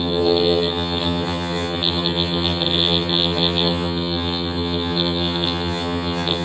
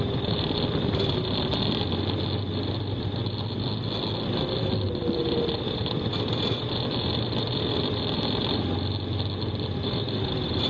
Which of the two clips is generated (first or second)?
first